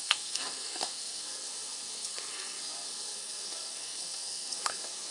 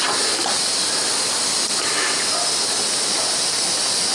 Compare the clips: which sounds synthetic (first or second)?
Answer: first